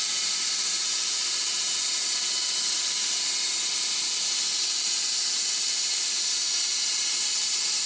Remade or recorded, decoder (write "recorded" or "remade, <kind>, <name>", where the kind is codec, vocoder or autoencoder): recorded